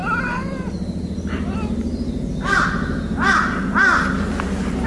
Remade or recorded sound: recorded